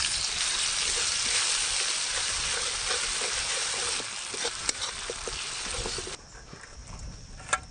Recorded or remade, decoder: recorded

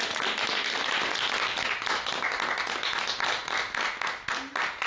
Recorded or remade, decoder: recorded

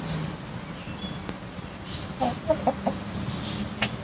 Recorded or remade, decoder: recorded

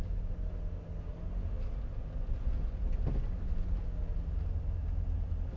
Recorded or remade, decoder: recorded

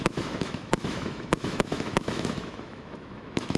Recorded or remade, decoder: remade, autoencoder, DAC-VAE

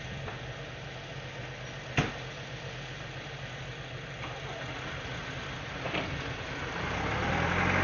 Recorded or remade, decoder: recorded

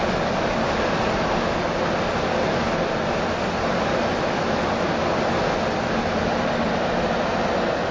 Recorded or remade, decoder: recorded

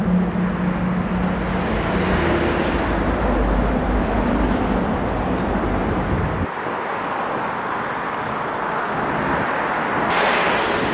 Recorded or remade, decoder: recorded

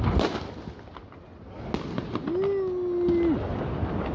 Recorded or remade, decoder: recorded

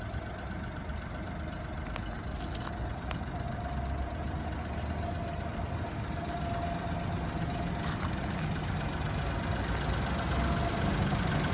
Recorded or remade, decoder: recorded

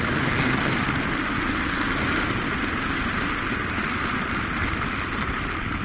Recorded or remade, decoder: recorded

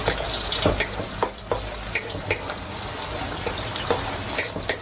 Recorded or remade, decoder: recorded